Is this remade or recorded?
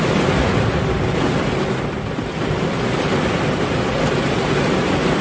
recorded